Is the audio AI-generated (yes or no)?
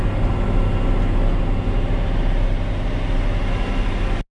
no